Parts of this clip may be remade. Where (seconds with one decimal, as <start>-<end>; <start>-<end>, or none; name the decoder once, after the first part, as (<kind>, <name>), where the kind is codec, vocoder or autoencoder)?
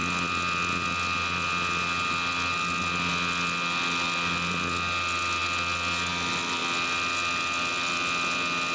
none